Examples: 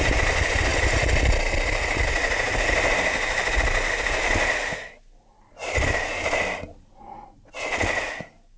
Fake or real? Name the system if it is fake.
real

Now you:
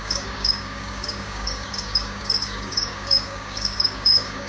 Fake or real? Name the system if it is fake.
fake, codec, DAC